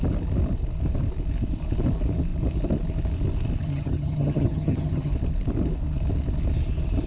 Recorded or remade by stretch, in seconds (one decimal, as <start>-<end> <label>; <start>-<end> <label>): 0.0-3.6 recorded; 3.6-5.1 remade; 5.1-7.1 recorded